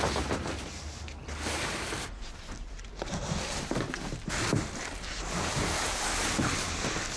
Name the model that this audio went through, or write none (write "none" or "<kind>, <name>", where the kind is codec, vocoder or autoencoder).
none